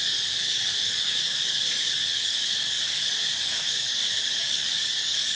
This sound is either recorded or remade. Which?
remade